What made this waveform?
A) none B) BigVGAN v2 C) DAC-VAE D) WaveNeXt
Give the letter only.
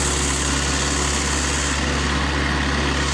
A